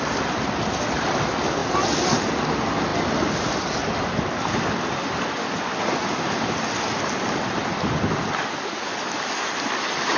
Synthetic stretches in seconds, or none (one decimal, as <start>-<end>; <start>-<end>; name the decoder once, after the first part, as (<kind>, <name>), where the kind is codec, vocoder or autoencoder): none